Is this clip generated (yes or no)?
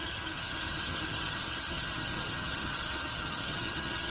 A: yes